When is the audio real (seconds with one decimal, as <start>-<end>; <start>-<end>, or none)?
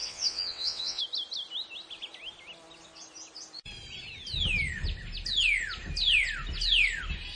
1.0-7.4